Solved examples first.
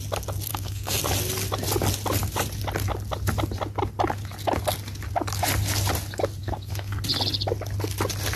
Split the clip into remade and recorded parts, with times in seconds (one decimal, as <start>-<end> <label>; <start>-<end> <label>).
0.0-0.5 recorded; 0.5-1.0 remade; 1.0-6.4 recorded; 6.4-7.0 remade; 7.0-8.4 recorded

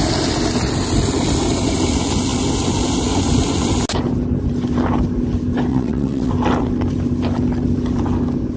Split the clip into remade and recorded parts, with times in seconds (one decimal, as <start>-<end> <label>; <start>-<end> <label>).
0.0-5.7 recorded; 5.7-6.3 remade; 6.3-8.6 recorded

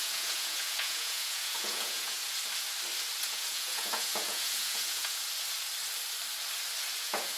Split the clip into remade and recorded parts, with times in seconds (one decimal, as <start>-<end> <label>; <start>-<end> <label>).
0.0-2.2 remade; 2.2-3.2 recorded; 3.2-5.2 remade; 5.2-7.0 recorded; 7.0-7.4 remade